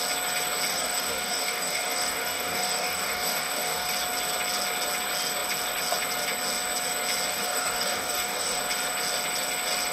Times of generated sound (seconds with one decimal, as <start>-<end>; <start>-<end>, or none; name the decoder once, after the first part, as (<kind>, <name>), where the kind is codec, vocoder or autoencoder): 0.7-3.9 (codec, DAC); 7.3-8.6